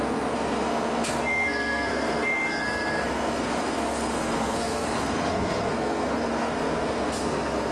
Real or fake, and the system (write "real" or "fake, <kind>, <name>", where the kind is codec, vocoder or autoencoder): fake, codec, SNAC